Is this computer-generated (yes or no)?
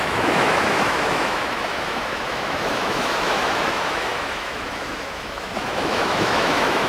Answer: yes